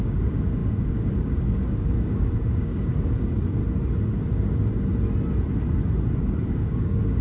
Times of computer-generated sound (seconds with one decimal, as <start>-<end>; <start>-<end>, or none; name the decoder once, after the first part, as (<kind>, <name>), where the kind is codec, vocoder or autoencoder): 0.0-3.6 (codec, DAC); 4.3-4.9; 6.2-7.2